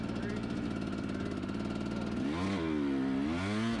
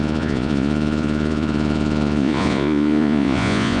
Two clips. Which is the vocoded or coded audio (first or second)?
second